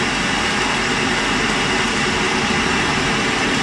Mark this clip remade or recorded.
recorded